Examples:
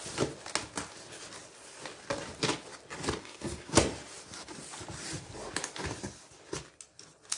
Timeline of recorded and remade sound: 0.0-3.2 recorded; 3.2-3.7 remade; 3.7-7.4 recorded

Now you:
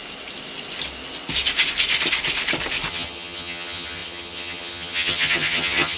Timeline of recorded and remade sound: 0.0-2.9 recorded; 2.9-6.0 remade

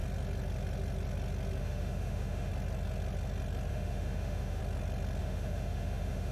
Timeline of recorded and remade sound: 0.0-1.6 recorded; 1.6-2.5 remade; 2.5-3.7 recorded; 3.7-4.6 remade; 4.6-5.2 recorded; 5.2-6.3 remade

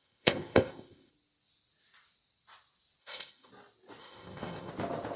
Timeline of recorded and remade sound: 0.0-1.1 remade; 1.1-3.0 recorded; 3.0-3.5 remade; 3.5-4.0 recorded; 4.0-4.7 remade; 4.7-5.2 recorded

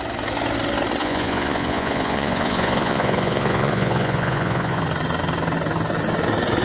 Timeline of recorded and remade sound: 0.0-1.0 recorded; 1.0-4.8 remade; 4.8-6.6 recorded

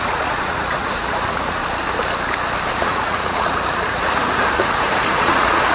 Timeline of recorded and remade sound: 0.0-1.6 remade; 1.6-2.7 recorded; 2.7-5.7 remade

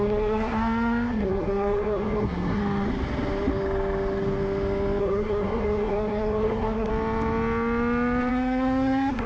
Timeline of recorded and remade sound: 0.0-2.6 remade; 2.6-5.0 recorded; 5.0-6.9 remade; 6.9-8.3 recorded; 8.3-9.3 remade